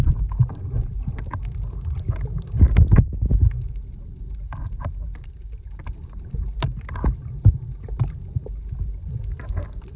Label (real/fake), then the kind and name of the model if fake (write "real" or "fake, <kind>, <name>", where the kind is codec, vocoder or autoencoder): real